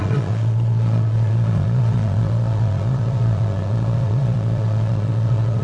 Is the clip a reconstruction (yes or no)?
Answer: yes